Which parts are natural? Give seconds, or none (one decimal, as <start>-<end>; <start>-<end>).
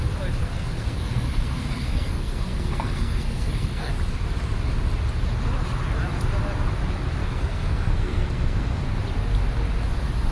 0.0-0.4; 3.9-7.2; 9.0-10.3